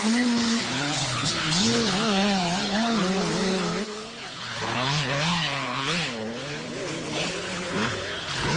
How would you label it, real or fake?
fake